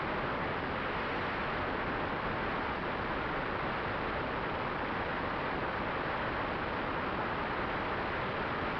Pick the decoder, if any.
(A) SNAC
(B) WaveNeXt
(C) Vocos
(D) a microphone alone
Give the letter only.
D